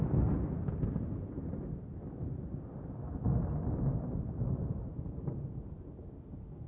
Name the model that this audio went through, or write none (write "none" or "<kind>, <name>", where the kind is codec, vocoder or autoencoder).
none